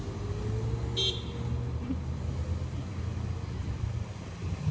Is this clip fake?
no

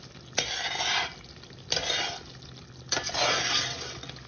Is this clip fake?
no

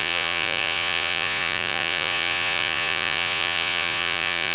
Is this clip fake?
yes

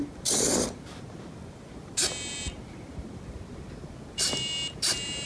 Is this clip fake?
yes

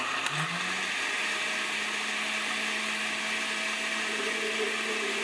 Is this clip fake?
no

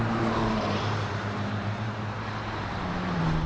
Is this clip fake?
yes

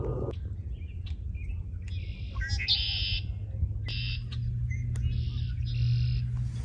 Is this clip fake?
no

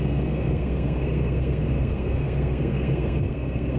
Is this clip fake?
yes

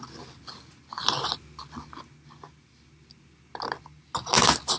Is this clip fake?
no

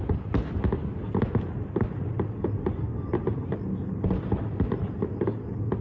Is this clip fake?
no